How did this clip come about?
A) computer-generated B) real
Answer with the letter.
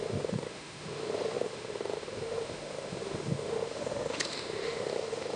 A